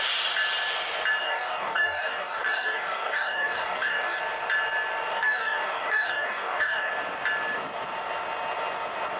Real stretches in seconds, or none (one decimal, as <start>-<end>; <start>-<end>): 0.0-1.2; 4.2-5.1; 6.9-9.2